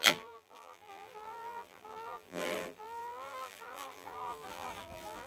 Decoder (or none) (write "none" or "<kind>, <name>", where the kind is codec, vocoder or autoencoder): vocoder, BigVGAN v2